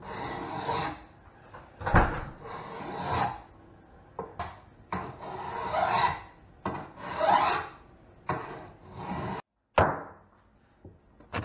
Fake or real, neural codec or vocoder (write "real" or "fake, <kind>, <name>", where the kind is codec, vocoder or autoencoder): real